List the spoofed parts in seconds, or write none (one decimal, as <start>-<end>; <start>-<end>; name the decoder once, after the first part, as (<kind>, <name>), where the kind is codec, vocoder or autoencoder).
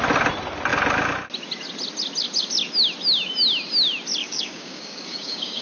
4.2-5.6 (codec, DAC)